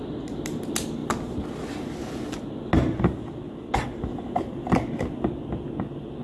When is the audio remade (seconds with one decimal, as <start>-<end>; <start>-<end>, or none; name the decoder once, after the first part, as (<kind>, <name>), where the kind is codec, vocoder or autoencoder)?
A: none